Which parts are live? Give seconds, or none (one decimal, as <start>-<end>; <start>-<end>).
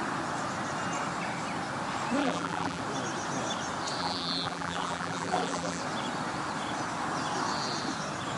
0.0-2.2; 2.8-4.0; 5.8-8.4